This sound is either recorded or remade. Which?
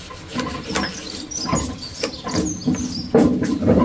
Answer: recorded